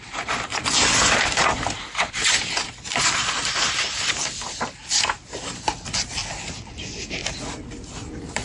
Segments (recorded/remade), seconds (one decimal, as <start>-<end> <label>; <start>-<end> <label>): 0.0-6.2 remade; 6.2-6.7 recorded; 6.7-7.2 remade; 7.2-7.8 recorded; 7.8-8.4 remade